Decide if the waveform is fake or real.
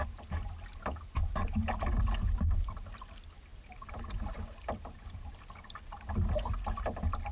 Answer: real